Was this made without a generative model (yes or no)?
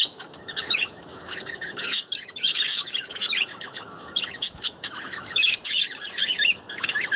no